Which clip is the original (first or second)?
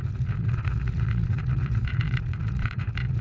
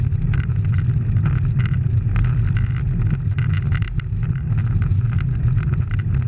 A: second